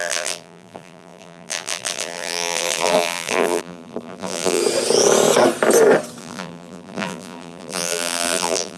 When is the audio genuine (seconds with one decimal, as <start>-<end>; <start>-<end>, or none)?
4.6-6.2